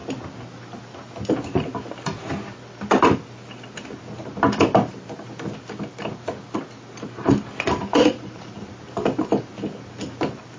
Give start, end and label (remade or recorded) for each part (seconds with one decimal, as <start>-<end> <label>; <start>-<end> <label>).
0.0-7.8 recorded; 7.8-8.5 remade; 8.5-10.6 recorded